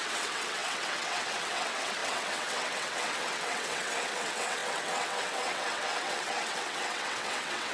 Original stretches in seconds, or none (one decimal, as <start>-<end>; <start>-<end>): none